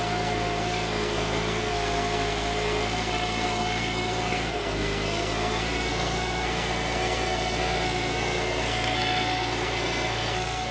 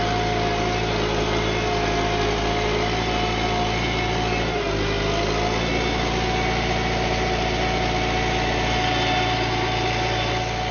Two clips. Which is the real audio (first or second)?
second